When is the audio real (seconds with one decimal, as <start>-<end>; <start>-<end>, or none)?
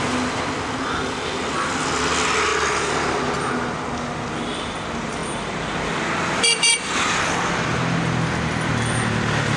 0.0-9.6